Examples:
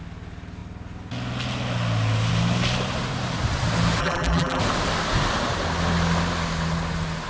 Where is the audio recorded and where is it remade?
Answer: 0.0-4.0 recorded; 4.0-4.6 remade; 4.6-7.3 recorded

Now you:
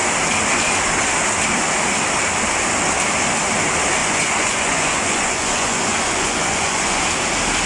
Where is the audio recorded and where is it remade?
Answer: 0.0-4.0 recorded; 4.0-7.0 remade; 7.0-7.7 recorded

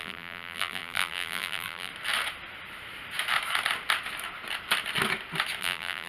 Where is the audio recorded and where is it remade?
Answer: 0.0-1.9 remade; 1.9-5.6 recorded; 5.6-6.1 remade

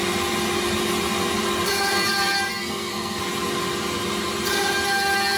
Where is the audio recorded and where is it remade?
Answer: 0.0-2.5 recorded; 2.5-3.2 remade; 3.2-5.4 recorded

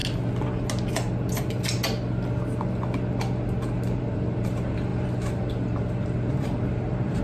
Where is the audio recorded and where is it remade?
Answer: 0.0-4.0 recorded; 4.0-7.2 remade

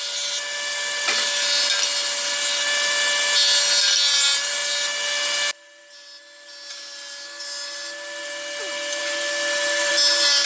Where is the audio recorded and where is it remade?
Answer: 0.0-10.5 recorded

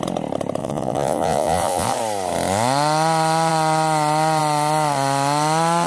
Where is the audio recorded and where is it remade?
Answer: 0.0-0.6 recorded; 0.6-2.0 remade; 2.0-5.9 recorded

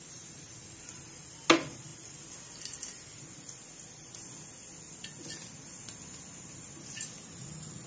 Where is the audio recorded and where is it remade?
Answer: 0.0-7.9 recorded